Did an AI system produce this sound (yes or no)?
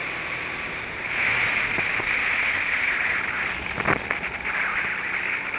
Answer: no